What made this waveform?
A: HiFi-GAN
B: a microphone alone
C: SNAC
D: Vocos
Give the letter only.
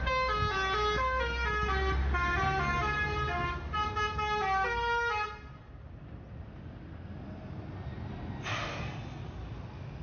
B